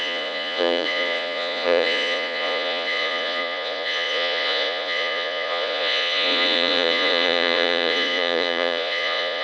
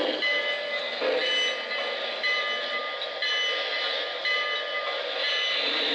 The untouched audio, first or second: second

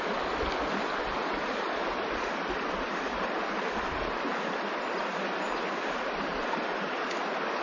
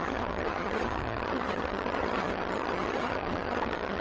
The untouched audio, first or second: first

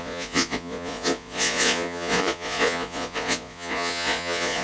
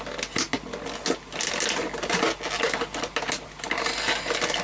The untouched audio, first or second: second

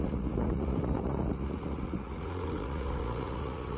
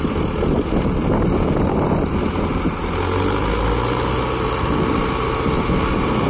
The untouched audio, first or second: second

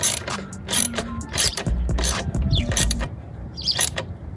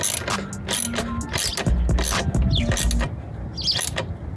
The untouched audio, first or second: second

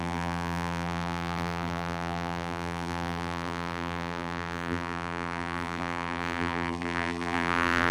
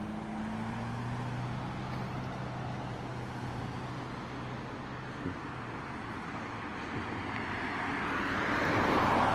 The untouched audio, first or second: second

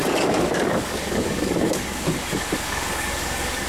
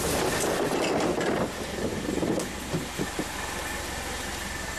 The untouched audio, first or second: second